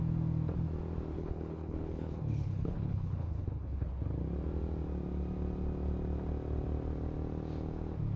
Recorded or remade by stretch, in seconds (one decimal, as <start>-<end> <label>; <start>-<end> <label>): 0.0-1.1 recorded; 1.1-3.9 remade; 3.9-8.2 recorded